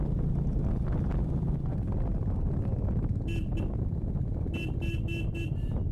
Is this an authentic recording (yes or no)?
yes